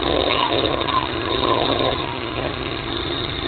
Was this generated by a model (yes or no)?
yes